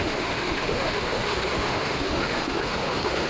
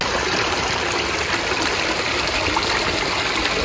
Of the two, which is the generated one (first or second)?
first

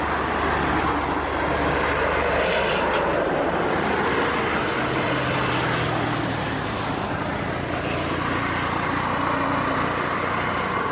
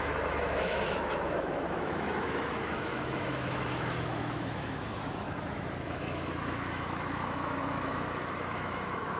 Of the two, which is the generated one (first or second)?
second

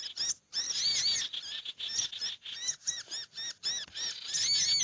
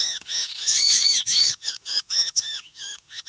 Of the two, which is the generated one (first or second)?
second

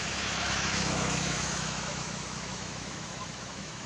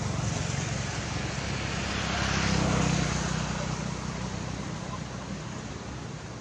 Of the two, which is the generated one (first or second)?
first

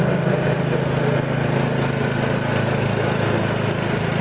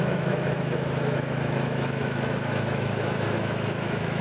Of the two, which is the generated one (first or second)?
second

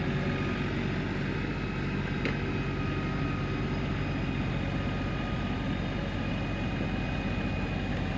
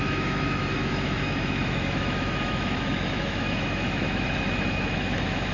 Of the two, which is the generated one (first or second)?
second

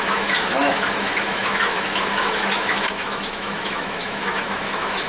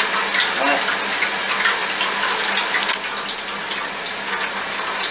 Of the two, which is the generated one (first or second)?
first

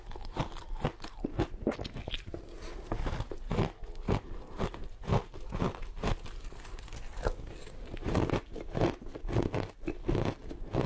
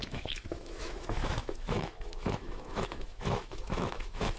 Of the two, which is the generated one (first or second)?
second